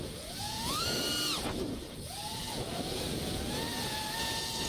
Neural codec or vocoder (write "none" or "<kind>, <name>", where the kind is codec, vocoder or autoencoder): vocoder, Vocos